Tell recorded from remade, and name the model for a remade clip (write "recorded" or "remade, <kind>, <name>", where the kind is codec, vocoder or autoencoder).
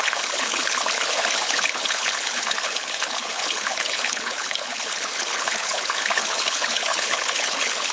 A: remade, codec, HILCodec